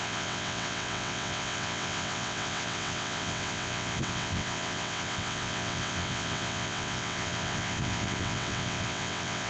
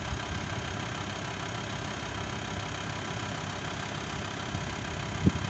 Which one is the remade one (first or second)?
first